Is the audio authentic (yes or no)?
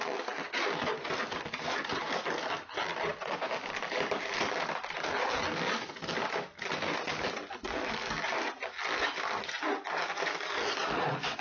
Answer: yes